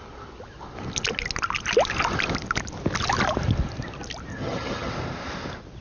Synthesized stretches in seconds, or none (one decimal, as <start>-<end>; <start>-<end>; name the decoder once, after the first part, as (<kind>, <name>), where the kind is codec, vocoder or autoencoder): 4.3-4.9 (vocoder, HiFi-GAN)